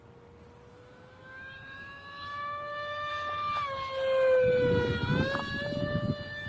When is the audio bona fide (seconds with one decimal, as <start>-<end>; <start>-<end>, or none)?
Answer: 0.0-0.7; 3.1-6.5